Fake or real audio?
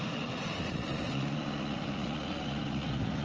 fake